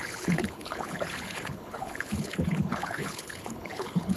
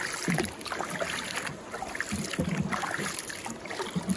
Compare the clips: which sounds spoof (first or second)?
first